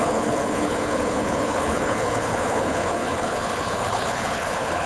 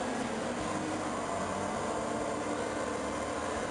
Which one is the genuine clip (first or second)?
second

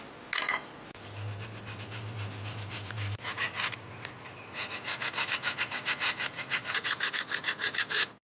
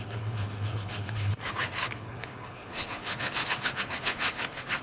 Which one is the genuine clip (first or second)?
first